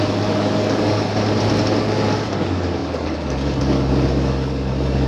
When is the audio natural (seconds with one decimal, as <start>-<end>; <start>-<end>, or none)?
1.1-1.8